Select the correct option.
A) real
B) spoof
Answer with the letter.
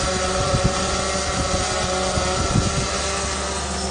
A